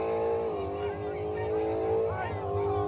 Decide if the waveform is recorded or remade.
recorded